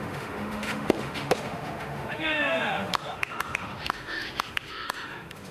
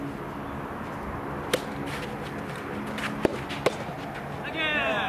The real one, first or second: second